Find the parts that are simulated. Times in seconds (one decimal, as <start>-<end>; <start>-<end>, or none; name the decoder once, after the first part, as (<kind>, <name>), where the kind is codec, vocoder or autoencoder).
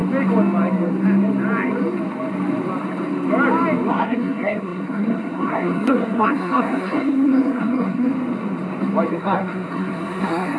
3.9-8.1 (codec, SNAC); 9.1-10.6